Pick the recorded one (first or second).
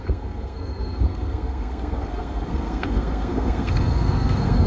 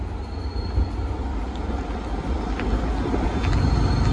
second